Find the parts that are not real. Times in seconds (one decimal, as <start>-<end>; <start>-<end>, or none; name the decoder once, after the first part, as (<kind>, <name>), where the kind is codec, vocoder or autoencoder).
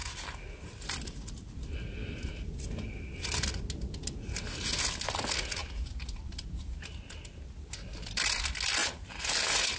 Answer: none